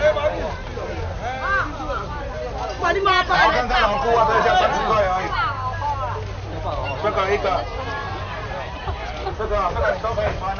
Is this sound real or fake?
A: real